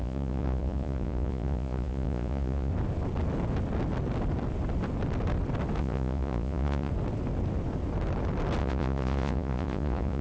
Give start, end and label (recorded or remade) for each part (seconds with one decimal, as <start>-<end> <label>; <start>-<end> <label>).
0.0-2.7 remade; 2.7-5.8 recorded; 5.8-6.9 remade; 6.9-8.6 recorded; 8.6-10.2 remade